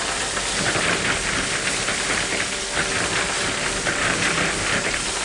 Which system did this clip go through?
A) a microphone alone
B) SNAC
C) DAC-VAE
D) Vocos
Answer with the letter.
A